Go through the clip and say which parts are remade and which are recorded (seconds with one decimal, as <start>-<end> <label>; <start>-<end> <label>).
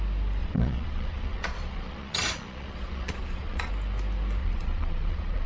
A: 0.0-0.4 recorded; 0.4-3.7 remade; 3.7-4.4 recorded; 4.4-5.5 remade